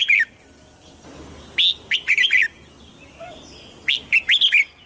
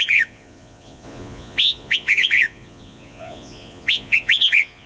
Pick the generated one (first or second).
second